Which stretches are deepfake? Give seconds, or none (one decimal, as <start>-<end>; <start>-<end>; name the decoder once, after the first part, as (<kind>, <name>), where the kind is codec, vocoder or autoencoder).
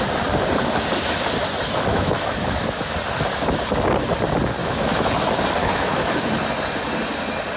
1.9-2.9 (autoencoder, DAC-VAE); 4.6-5.1; 5.6-6.3